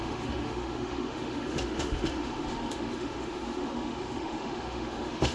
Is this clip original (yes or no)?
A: no